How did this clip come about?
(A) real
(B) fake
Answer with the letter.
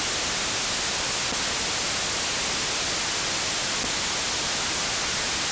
A